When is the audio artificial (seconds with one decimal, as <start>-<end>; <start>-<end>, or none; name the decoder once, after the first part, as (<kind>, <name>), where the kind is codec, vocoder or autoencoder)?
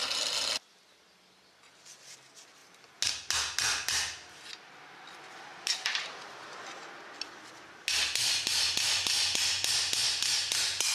none